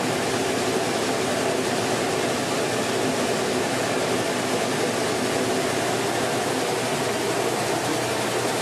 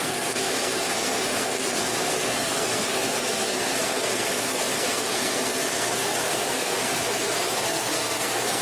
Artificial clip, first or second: second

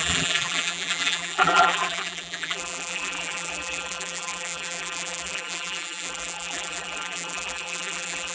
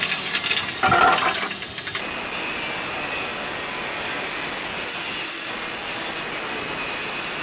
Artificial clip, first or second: first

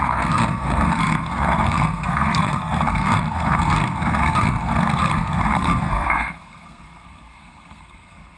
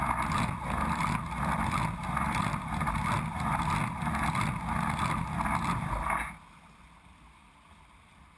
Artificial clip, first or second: first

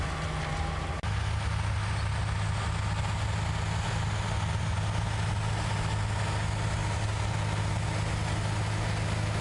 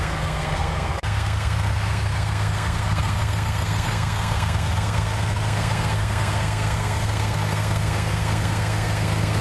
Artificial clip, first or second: second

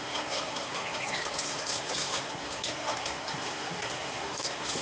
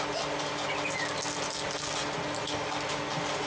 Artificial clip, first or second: first